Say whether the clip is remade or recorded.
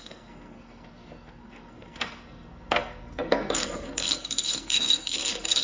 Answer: remade